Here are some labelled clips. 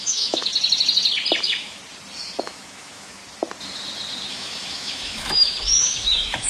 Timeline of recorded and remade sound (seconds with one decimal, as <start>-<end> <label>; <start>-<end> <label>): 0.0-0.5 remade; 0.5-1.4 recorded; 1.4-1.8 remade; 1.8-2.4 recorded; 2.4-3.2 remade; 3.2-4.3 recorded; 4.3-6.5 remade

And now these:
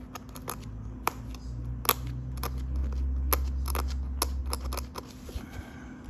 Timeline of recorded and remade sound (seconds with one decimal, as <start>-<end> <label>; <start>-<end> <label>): 0.0-6.1 recorded

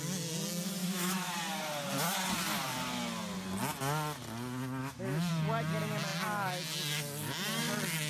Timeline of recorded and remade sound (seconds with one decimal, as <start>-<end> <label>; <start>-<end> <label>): 0.0-0.8 recorded; 0.8-1.3 remade; 1.3-4.8 recorded; 4.8-5.3 remade; 5.3-8.1 recorded

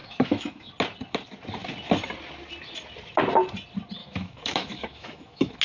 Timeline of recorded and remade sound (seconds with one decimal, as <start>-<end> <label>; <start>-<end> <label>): 0.0-0.7 remade; 0.7-4.0 recorded; 4.0-5.6 remade

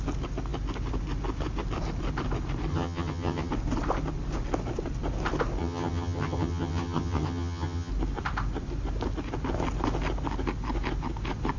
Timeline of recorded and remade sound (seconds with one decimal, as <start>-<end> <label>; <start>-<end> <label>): 0.0-2.7 recorded; 2.7-3.5 remade; 3.5-5.6 recorded; 5.6-7.9 remade; 7.9-11.6 recorded